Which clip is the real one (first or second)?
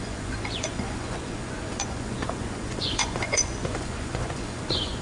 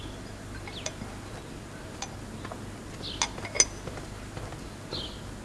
second